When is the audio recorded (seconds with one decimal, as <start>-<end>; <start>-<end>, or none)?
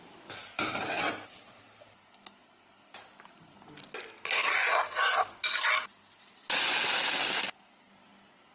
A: 0.0-8.5